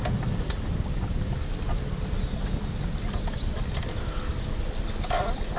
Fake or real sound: real